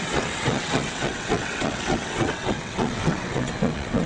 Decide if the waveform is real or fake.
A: fake